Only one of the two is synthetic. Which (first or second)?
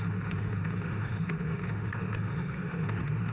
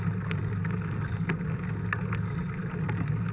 first